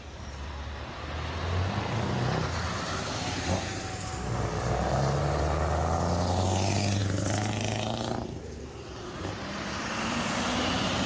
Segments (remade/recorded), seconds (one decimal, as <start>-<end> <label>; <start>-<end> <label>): 0.0-7.0 recorded; 7.0-11.1 remade